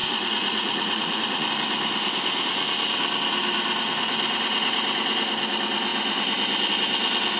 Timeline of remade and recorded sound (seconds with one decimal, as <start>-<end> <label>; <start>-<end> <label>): 0.0-1.5 remade; 1.5-7.4 recorded